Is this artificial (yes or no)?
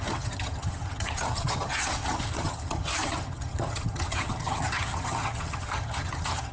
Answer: yes